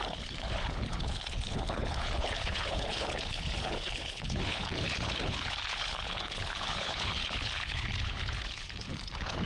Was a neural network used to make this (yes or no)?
yes